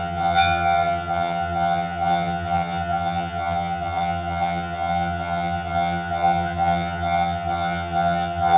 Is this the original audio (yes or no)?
no